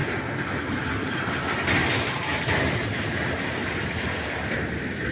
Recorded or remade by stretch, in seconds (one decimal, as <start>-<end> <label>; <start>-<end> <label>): 0.0-5.1 recorded